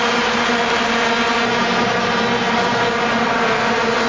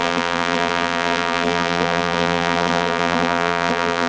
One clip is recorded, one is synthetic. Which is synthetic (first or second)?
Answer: second